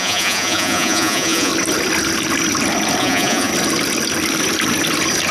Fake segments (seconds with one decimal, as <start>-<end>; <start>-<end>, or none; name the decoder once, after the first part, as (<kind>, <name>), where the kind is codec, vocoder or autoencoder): 0.0-1.5 (vocoder, Vocos); 3.0-3.5